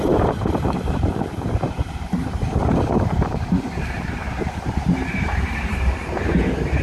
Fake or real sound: fake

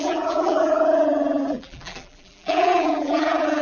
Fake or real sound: fake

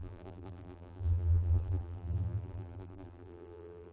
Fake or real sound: fake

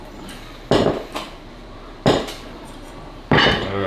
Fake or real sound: fake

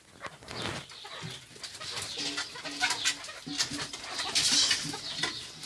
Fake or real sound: real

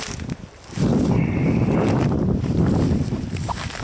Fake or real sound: fake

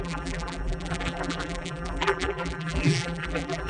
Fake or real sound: fake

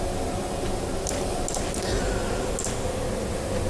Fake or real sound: real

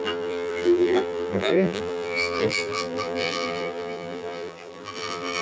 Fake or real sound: fake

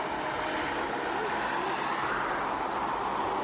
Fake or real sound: real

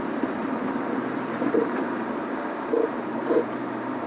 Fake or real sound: fake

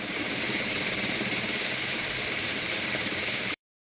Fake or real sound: fake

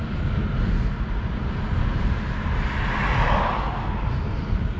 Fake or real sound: real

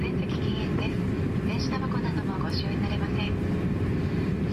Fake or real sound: fake